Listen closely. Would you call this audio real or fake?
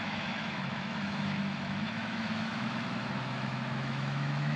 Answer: fake